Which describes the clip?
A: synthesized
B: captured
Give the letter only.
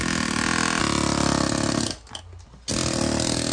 B